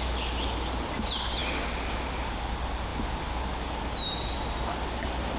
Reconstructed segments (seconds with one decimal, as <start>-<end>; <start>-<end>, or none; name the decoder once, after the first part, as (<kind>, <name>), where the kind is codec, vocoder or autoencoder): none

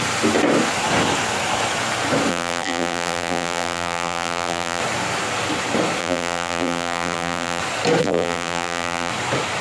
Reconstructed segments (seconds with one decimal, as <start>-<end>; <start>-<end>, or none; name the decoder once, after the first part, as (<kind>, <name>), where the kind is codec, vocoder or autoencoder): 2.3-4.8 (vocoder, BigVGAN v2); 6.0-7.6; 8.0-9.1